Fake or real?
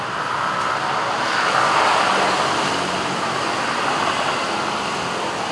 real